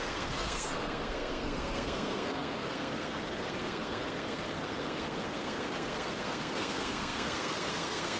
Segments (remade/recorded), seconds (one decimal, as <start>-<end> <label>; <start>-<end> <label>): 0.0-8.2 remade